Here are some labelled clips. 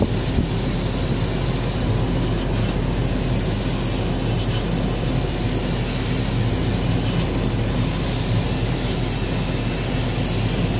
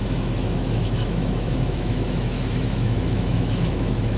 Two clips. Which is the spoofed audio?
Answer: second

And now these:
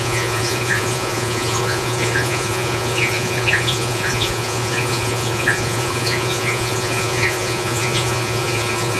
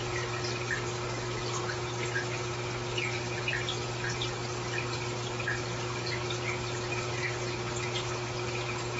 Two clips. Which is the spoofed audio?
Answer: first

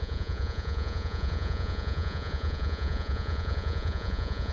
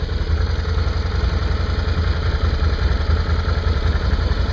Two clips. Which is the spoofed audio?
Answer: first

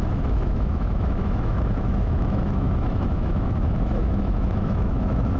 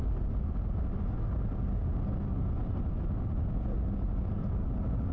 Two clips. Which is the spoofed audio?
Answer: first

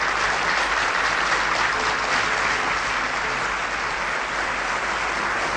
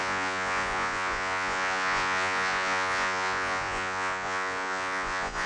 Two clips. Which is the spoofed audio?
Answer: second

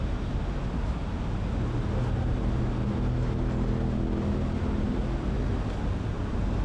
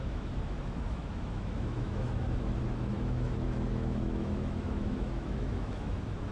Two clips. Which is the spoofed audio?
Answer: second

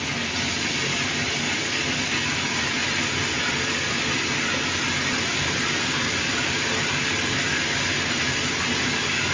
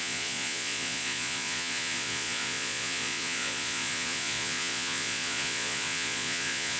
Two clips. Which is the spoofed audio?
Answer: second